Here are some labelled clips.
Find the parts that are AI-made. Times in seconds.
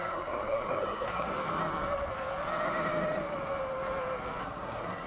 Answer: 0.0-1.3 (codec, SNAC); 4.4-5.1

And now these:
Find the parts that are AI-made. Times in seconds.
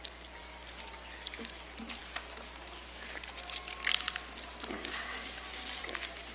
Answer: none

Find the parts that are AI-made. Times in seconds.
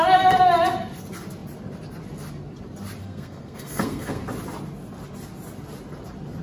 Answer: 3.0-4.2 (codec, SNAC)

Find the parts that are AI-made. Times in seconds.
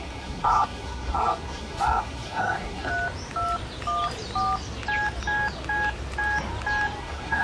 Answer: 0.0-2.9 (codec, SNAC); 7.0-7.4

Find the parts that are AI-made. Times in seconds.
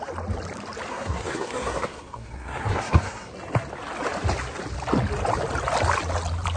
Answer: 0.9-3.3 (codec, SNAC)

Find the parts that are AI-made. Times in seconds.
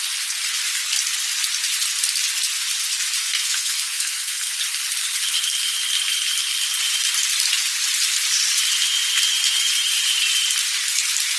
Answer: 3.2-4.6 (codec, SNAC)